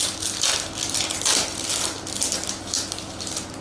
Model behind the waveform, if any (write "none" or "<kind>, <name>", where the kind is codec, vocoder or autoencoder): none